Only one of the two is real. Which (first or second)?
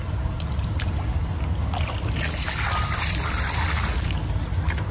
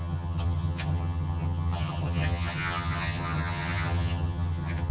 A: first